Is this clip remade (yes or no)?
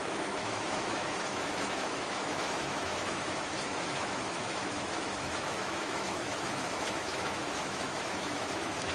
yes